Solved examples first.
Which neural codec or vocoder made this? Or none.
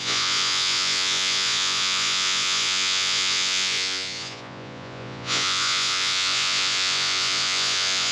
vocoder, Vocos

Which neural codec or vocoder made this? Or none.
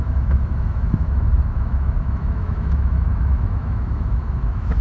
autoencoder, DAC-VAE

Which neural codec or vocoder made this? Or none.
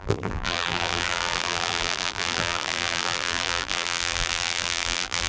vocoder, BigVGAN v2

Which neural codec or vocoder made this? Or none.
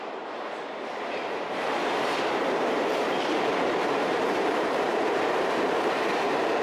vocoder, BigVGAN v2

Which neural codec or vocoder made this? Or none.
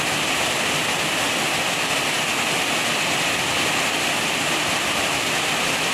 none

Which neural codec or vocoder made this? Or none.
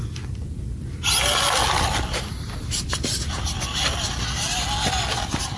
none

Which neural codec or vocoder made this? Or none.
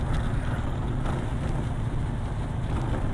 none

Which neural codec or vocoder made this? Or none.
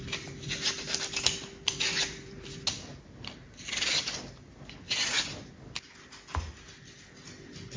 none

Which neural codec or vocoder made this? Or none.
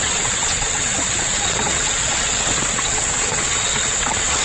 vocoder, WaveNeXt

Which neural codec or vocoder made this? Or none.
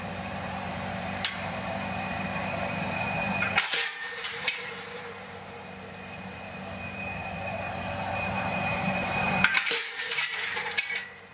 vocoder, BigVGAN v2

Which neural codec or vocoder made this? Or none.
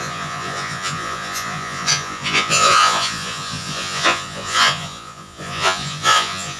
vocoder, Vocos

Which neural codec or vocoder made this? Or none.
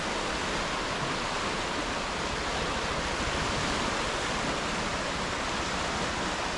none